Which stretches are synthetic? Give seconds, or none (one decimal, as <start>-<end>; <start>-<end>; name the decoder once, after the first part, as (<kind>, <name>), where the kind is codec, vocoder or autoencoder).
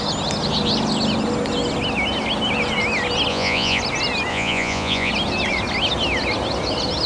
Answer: 3.3-3.8 (vocoder, Vocos); 4.3-5.1